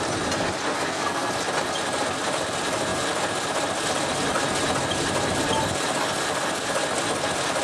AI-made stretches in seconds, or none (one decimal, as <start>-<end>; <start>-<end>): 0.7-1.3